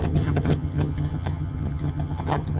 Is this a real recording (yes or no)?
no